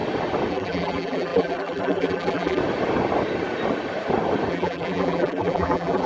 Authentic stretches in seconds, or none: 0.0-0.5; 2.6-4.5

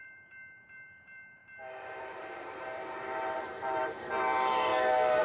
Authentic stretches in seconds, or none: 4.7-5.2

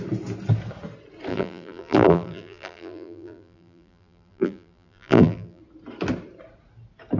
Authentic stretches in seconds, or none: 0.0-1.3; 5.6-7.2

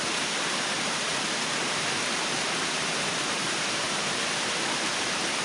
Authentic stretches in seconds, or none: 1.1-1.6

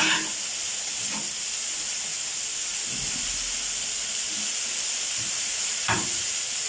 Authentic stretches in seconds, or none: 0.0-6.7